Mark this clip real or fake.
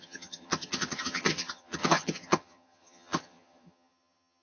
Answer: fake